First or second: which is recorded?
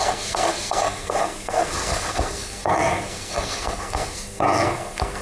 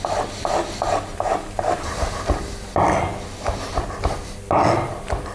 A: second